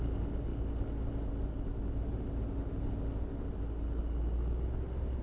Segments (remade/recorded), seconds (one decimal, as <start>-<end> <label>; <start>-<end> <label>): 0.0-5.2 recorded